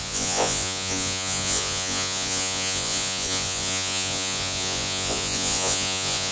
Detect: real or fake fake